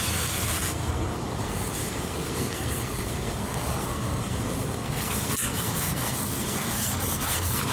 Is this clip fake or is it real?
fake